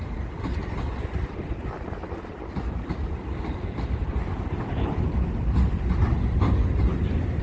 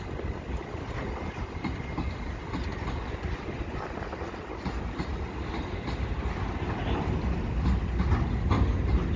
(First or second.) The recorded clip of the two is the second